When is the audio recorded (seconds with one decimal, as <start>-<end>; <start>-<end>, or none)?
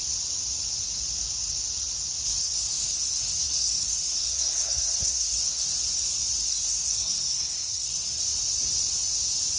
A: 0.0-2.4; 5.7-6.5; 8.2-9.6